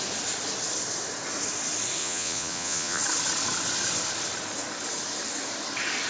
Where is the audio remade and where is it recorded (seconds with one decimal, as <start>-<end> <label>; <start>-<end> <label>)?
0.0-2.0 recorded; 2.0-3.0 remade; 3.0-6.1 recorded